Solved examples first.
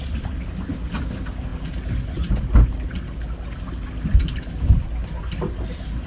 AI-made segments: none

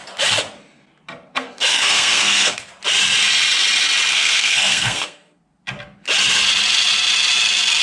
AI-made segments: 1.3-2.7 (codec, SNAC); 4.1-5.4

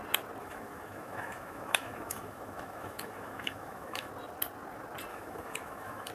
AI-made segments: 0.4-4.1 (autoencoder, DAC-VAE); 5.1-6.1